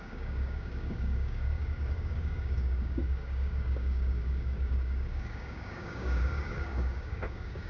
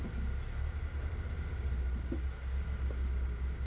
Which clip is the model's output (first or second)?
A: first